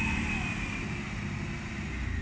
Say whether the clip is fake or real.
real